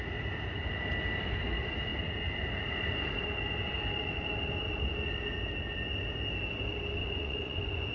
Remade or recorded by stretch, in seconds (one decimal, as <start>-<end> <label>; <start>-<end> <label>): 0.0-7.0 recorded; 7.0-7.9 remade